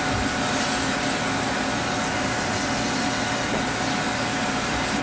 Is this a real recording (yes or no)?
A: yes